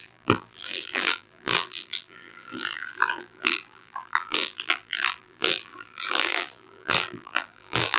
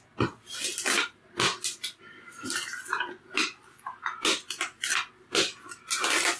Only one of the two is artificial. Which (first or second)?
first